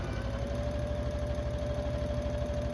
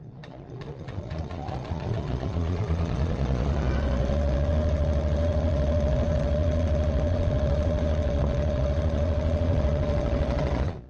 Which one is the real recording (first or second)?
first